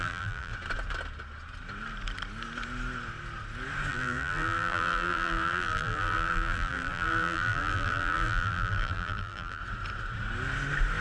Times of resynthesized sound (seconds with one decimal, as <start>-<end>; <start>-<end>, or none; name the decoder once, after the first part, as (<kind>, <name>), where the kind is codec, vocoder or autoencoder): 0.0-0.5 (vocoder, BigVGAN v2); 3.9-9.6